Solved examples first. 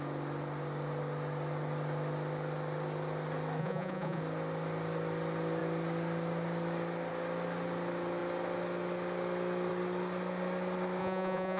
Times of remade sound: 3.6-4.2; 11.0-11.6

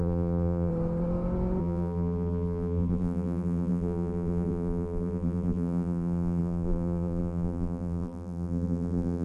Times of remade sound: 0.0-0.7; 1.6-9.2